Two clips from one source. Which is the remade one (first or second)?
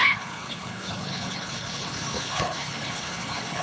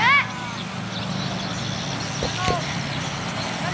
first